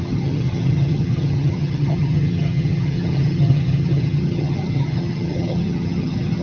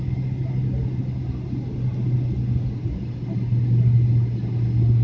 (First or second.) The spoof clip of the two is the first